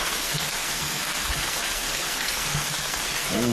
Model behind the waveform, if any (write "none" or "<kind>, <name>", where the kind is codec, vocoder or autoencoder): codec, SNAC